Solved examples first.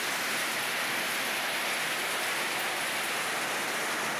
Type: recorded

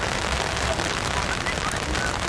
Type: recorded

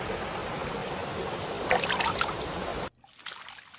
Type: recorded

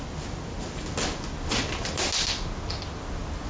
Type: recorded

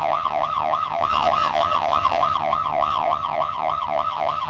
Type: remade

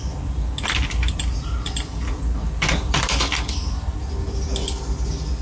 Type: recorded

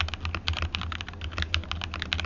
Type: recorded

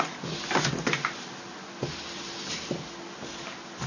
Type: recorded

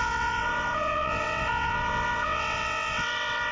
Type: remade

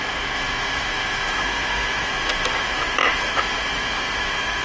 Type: remade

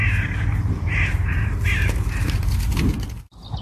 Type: recorded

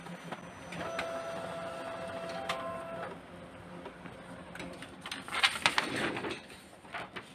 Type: recorded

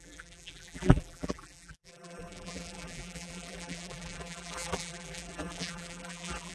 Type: remade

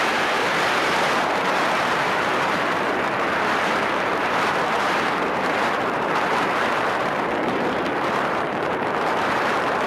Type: remade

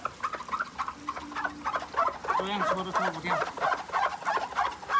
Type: recorded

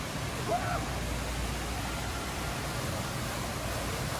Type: recorded